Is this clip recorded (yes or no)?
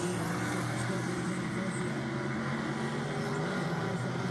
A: yes